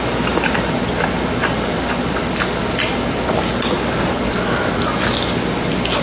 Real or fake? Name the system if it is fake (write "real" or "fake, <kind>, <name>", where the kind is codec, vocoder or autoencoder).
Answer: real